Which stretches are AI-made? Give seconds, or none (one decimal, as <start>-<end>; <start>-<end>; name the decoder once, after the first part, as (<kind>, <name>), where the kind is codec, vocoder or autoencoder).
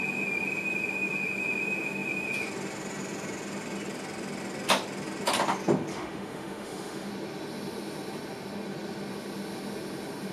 5.9-7.1 (autoencoder, DAC-VAE)